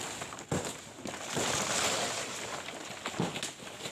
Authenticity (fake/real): real